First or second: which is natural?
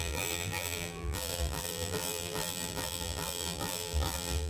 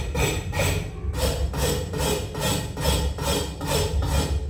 second